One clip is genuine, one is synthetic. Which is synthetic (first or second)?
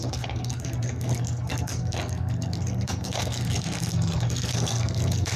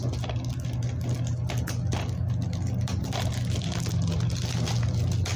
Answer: first